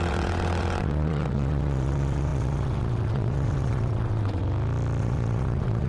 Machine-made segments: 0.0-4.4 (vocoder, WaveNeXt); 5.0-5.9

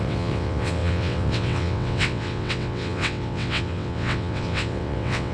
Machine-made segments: 0.0-5.3 (vocoder, WaveNeXt)

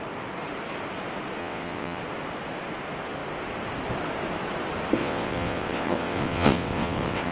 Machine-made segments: 1.4-2.0 (vocoder, WaveNeXt); 5.0-7.3